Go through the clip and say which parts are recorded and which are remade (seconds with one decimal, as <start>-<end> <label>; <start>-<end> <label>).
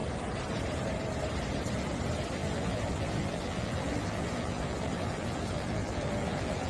0.0-2.4 recorded; 2.4-6.7 remade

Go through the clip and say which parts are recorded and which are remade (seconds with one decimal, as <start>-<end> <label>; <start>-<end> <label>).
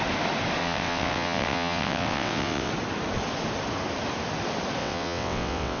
0.0-0.6 recorded; 0.6-2.7 remade; 2.7-4.8 recorded; 4.8-5.8 remade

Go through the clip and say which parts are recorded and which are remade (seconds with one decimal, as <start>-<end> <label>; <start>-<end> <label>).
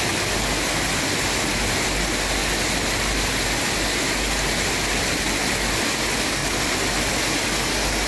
0.0-8.1 recorded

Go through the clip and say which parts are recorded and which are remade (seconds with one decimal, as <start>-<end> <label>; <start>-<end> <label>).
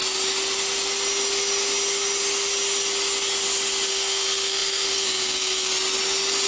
0.0-3.9 recorded; 3.9-5.7 remade; 5.7-6.5 recorded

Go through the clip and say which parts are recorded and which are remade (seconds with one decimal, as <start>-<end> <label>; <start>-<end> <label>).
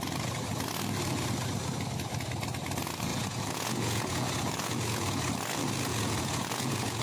0.0-3.1 recorded; 3.1-5.3 remade; 5.3-5.9 recorded; 5.9-7.0 remade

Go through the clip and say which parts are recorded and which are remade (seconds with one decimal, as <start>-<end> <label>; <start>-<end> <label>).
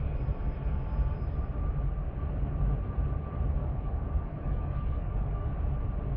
0.0-3.6 recorded; 3.6-5.5 remade; 5.5-6.2 recorded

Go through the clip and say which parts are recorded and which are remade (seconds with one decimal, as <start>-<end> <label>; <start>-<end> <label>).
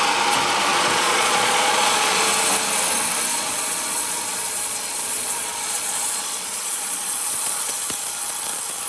0.0-0.7 recorded; 0.7-2.2 remade; 2.2-3.3 recorded; 3.3-7.7 remade; 7.7-8.9 recorded